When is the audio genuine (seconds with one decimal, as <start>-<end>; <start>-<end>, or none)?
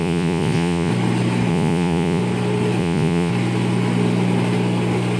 0.9-1.5; 2.2-2.8; 3.3-5.2